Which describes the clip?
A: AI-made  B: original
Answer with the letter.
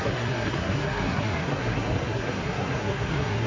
A